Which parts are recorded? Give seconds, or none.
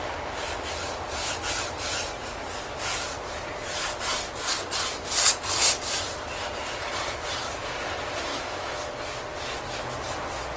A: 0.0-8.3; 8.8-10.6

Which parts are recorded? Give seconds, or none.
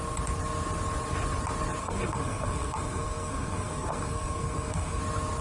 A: 0.0-1.8; 5.0-5.4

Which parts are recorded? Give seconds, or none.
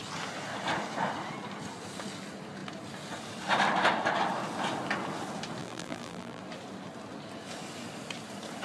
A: 0.0-5.6; 6.4-8.6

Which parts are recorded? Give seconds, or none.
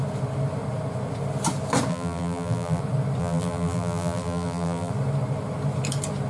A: 0.0-1.9; 2.8-3.2; 4.9-6.3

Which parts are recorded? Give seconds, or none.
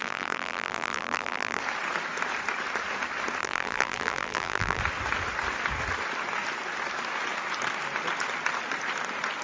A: 1.6-3.4; 4.8-9.4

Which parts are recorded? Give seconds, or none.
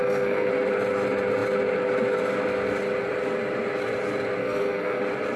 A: 0.5-4.4; 5.0-5.4